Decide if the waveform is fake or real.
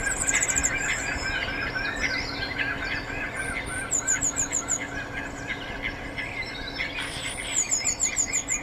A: real